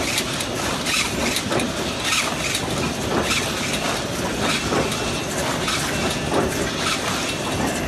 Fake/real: real